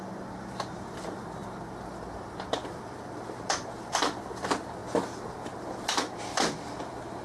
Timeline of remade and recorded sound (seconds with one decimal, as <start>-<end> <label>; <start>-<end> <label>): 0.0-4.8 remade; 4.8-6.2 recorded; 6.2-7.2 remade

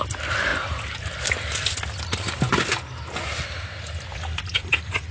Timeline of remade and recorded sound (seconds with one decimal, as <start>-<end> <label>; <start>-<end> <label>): 0.0-4.1 recorded; 4.1-5.1 remade

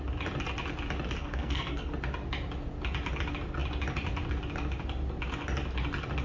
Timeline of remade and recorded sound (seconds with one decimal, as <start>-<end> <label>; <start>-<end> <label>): 0.0-1.2 recorded; 1.2-1.9 remade; 1.9-6.2 recorded

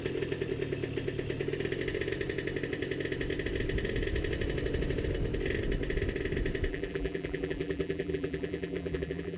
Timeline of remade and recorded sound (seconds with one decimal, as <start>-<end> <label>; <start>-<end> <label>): 0.0-6.7 recorded; 6.7-9.4 remade